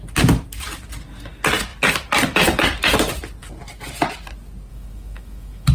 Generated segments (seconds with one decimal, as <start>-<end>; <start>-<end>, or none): 4.7-5.7